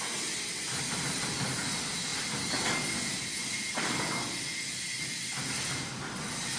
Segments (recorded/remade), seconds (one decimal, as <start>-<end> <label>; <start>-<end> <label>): 0.0-6.6 recorded